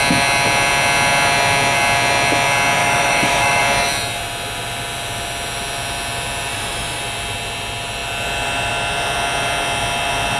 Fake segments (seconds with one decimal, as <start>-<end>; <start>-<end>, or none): 2.8-3.6; 6.5-7.0